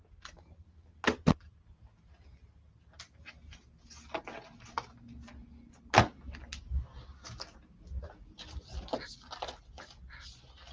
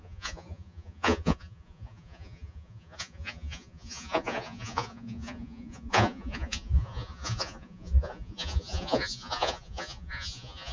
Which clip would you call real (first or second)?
first